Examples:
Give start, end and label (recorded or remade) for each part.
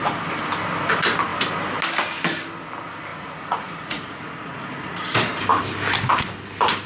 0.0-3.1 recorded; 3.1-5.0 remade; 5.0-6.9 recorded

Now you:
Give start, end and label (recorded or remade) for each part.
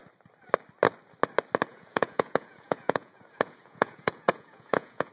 0.0-1.7 recorded; 1.7-5.1 remade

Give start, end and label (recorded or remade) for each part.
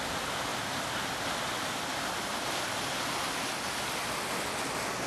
0.0-5.1 recorded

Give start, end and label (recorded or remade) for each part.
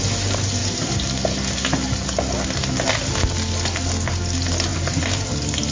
0.0-5.7 recorded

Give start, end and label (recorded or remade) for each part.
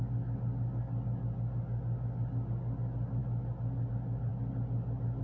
0.0-5.2 recorded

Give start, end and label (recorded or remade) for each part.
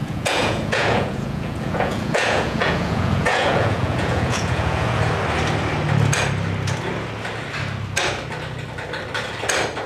0.0-5.0 remade; 5.0-9.9 recorded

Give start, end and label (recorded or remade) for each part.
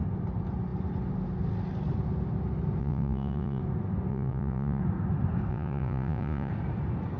0.0-2.8 recorded; 2.8-3.6 remade; 3.6-4.1 recorded; 4.1-4.8 remade; 4.8-5.5 recorded; 5.5-6.5 remade; 6.5-7.2 recorded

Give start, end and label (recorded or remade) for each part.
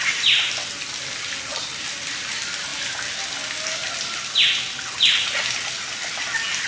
0.0-6.7 recorded